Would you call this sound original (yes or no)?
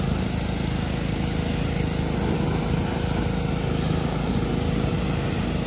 yes